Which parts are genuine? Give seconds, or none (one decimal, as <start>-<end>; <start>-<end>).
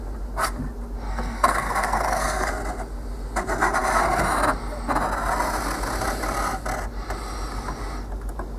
0.0-1.1; 2.5-8.6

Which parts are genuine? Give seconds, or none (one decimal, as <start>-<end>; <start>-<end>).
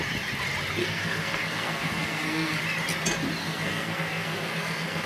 0.0-0.8; 2.6-3.4